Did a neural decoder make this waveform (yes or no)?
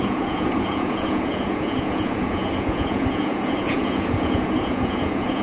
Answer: yes